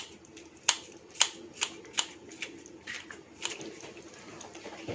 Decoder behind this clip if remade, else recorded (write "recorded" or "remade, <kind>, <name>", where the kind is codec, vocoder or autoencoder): recorded